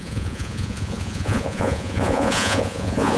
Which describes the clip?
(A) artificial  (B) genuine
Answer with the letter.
A